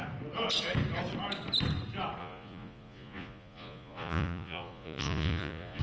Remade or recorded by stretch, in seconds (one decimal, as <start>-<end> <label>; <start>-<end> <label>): 0.0-2.2 recorded; 2.2-5.8 remade